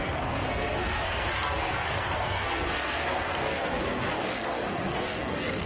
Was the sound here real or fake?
fake